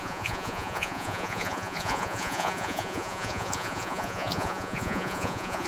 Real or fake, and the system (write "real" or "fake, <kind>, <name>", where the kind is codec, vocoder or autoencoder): fake, vocoder, Vocos